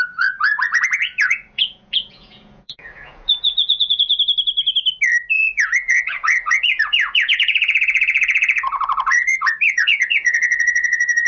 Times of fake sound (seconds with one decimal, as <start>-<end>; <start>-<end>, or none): 0.0-4.1; 5.3-11.3